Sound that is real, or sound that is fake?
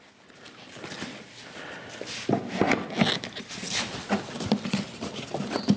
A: real